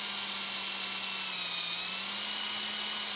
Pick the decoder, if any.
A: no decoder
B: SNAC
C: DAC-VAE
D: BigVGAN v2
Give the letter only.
A